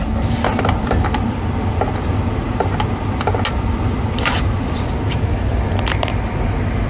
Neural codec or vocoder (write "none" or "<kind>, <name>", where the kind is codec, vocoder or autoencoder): none